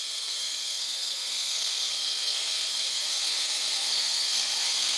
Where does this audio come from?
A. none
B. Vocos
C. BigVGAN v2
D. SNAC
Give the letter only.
D